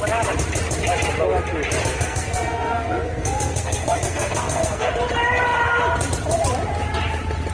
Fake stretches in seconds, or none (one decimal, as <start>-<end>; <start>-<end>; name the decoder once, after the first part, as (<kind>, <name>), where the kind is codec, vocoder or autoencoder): 1.9-4.9 (codec, SNAC)